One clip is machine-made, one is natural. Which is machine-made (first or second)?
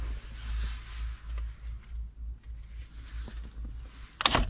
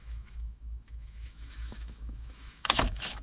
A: second